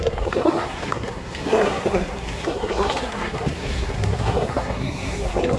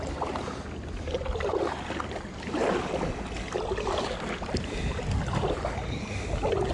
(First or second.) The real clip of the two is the second